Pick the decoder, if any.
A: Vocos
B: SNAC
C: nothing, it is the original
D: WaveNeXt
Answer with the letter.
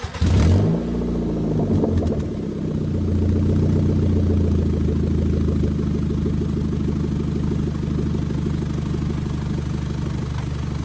C